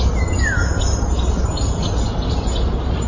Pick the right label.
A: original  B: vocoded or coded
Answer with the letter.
A